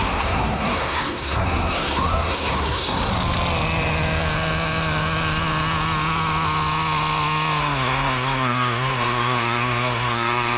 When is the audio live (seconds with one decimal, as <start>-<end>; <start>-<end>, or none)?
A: 3.1-7.6